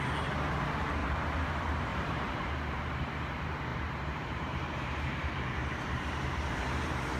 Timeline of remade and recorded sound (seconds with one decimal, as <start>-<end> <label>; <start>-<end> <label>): 0.0-1.0 recorded; 1.0-1.5 remade; 1.5-1.9 recorded; 1.9-2.5 remade; 2.5-3.7 recorded; 3.7-6.5 remade; 6.5-7.2 recorded